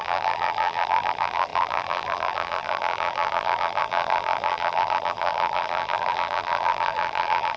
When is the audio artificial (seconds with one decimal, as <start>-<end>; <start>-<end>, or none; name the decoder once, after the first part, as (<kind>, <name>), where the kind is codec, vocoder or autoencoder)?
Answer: 0.0-7.6 (vocoder, BigVGAN v2)